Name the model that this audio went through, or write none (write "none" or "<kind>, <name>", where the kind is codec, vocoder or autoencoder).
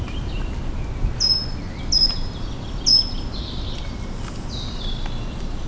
none